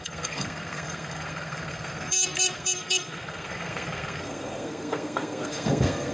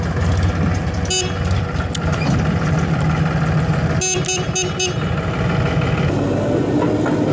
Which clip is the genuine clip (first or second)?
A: second